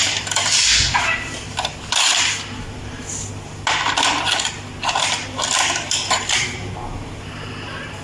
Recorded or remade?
recorded